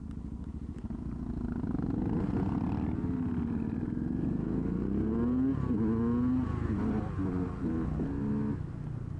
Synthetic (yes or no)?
no